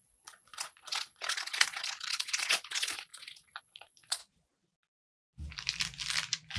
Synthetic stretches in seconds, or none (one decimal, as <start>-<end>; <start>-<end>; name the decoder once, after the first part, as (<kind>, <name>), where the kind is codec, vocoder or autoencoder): 0.0-4.2 (vocoder, Vocos)